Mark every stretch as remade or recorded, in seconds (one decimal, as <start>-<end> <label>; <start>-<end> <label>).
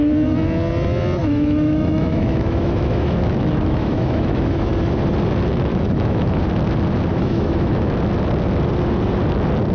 0.0-1.2 recorded; 1.2-4.7 remade; 4.7-5.7 recorded; 5.7-6.4 remade; 6.4-7.1 recorded; 7.1-7.9 remade; 7.9-9.7 recorded